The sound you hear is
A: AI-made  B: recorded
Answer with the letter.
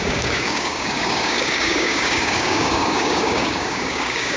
A